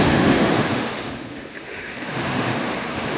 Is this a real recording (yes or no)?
no